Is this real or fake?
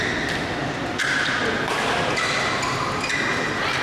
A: real